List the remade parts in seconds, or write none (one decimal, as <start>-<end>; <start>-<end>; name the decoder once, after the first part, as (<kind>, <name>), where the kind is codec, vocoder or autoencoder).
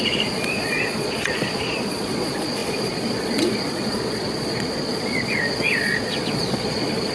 0.0-7.1 (vocoder, Vocos)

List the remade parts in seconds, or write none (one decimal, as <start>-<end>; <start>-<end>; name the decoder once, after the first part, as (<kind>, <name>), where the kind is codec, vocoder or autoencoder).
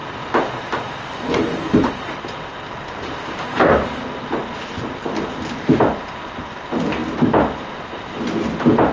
none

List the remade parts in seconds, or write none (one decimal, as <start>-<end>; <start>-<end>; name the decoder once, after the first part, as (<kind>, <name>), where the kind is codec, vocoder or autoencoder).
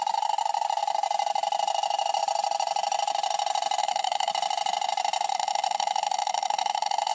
3.8-4.3 (autoencoder, DAC-VAE); 5.3-7.1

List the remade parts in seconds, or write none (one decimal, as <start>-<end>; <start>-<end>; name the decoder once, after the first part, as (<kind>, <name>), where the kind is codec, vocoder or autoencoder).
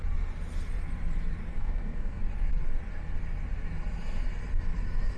1.5-2.2 (codec, SNAC)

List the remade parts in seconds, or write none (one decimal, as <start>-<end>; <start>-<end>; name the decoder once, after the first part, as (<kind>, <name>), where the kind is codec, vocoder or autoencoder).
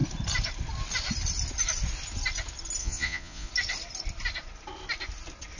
2.8-3.5 (vocoder, Vocos)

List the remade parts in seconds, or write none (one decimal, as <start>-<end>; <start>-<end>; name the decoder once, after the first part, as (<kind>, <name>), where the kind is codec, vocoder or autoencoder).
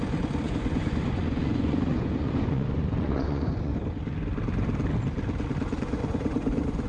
0.0-3.7 (vocoder, Vocos); 5.8-6.9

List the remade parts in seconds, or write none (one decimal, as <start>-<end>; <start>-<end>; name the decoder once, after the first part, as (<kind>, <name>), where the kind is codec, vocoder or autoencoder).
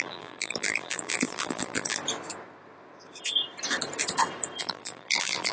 0.0-2.0 (vocoder, BigVGAN v2); 4.6-5.5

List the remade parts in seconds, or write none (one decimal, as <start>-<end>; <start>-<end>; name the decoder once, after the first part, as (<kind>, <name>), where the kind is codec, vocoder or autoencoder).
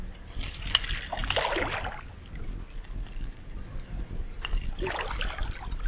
none